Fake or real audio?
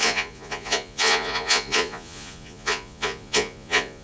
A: fake